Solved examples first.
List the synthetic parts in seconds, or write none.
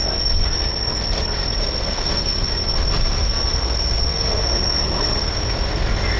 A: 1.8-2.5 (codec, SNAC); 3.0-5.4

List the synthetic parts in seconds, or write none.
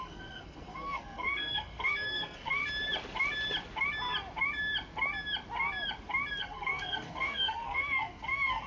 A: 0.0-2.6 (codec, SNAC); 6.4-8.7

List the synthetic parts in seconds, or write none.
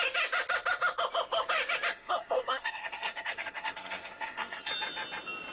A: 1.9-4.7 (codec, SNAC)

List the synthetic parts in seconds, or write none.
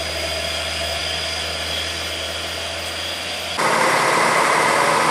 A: none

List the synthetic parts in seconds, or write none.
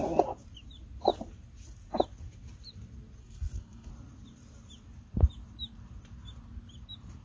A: 3.2-3.9 (codec, SNAC)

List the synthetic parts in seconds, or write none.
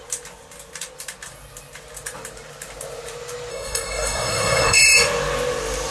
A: 3.5-4.8 (codec, SNAC)